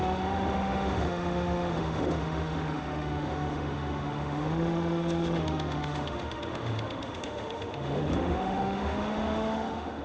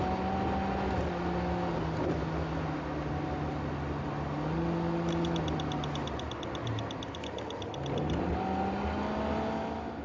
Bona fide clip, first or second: second